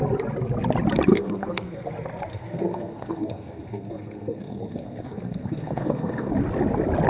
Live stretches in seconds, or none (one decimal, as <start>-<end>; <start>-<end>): 0.0-1.1; 1.9-2.3; 6.3-7.1